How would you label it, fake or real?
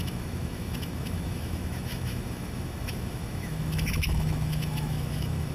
fake